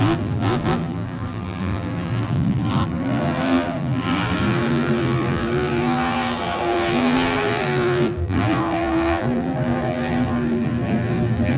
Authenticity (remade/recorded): remade